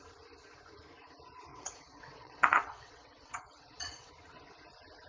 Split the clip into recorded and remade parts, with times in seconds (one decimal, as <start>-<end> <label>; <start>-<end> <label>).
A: 0.0-1.5 recorded; 1.5-4.1 remade; 4.1-5.1 recorded